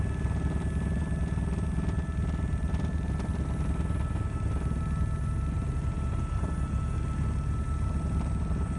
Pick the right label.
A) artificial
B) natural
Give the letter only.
B